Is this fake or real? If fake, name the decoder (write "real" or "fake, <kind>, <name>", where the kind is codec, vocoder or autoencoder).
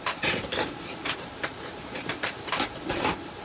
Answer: fake, vocoder, BigVGAN v2